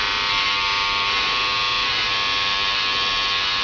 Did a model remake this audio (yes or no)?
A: yes